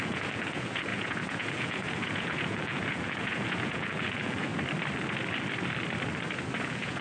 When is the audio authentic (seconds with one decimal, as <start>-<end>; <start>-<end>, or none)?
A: 4.5-6.6